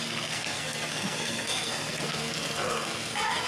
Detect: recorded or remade remade